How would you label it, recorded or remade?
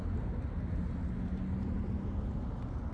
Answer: recorded